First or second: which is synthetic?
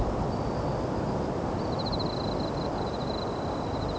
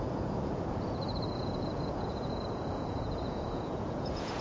second